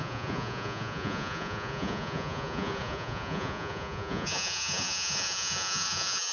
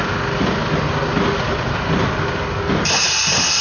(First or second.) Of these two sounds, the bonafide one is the second